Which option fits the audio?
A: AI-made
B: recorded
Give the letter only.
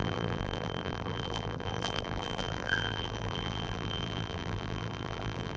A